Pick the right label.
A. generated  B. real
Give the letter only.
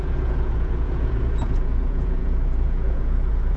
A